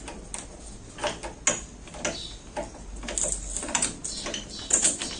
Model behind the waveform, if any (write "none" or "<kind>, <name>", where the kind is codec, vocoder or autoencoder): none